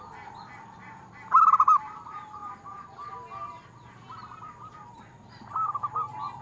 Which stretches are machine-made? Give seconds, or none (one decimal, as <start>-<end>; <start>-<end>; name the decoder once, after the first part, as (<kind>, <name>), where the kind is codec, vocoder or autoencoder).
none